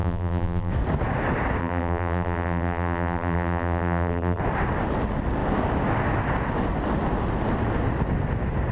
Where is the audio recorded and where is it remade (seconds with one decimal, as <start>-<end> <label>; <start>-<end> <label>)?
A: 0.0-0.7 remade; 0.7-1.6 recorded; 1.6-4.4 remade; 4.4-8.7 recorded